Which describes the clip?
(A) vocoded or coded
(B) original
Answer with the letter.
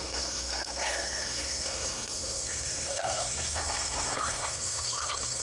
A